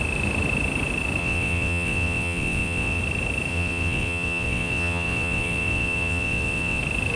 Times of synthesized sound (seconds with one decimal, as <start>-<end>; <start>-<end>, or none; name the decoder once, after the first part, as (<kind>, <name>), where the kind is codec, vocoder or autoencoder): 1.2-3.0 (vocoder, WaveNeXt); 3.5-6.8